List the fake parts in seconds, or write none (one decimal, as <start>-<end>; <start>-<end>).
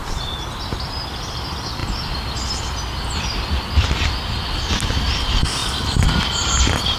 none